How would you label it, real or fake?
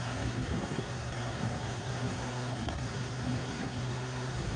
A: fake